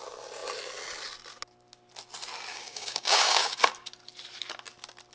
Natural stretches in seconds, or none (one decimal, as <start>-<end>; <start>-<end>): 0.0-2.5; 3.6-5.1